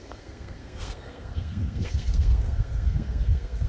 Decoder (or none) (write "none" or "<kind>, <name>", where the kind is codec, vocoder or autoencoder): codec, SNAC